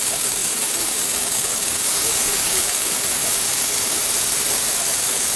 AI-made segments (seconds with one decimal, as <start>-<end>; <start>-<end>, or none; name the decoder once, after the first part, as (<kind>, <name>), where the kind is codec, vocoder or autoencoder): 0.0-4.0 (codec, DAC); 5.0-5.4